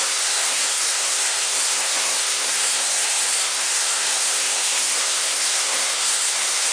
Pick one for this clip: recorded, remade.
remade